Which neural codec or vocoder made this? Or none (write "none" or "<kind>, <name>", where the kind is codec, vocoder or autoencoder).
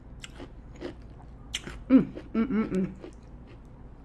none